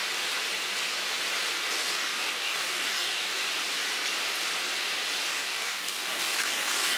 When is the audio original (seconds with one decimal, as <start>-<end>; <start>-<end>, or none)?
0.0-1.7; 3.4-5.3